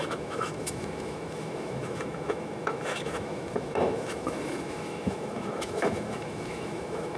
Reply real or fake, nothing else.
fake